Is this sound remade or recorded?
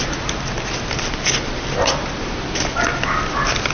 recorded